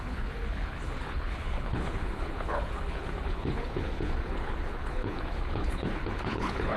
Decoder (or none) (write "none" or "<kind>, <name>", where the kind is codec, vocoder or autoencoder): codec, HILCodec